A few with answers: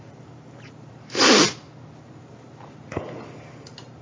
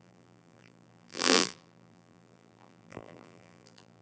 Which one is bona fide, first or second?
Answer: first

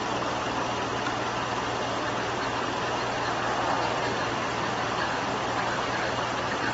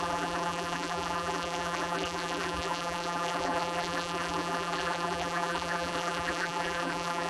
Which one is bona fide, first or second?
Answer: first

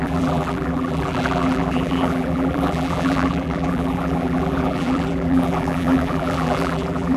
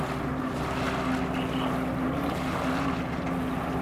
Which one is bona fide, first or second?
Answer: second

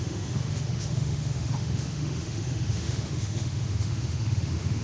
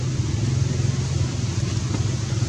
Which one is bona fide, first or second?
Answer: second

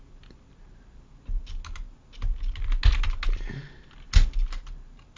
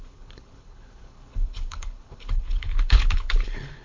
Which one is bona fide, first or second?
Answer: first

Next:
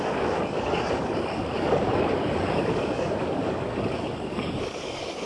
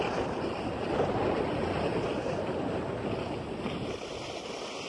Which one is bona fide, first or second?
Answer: second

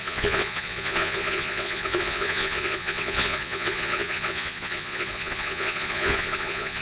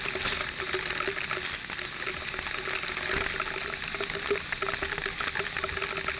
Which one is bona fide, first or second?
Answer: second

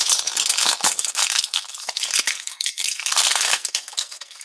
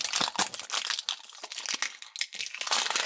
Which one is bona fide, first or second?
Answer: second